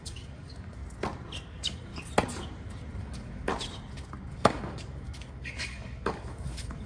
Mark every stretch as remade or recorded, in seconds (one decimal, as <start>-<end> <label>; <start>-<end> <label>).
0.0-0.8 remade; 0.8-1.4 recorded; 1.4-1.9 remade; 1.9-3.0 recorded; 3.0-3.5 remade; 3.5-4.3 recorded; 4.3-6.9 remade